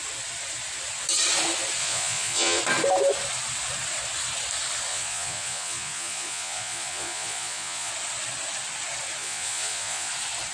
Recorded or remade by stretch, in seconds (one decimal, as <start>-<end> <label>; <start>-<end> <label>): 0.0-1.8 recorded; 1.8-2.6 remade; 2.6-4.9 recorded; 4.9-7.9 remade; 7.9-9.2 recorded; 9.2-10.1 remade; 10.1-10.5 recorded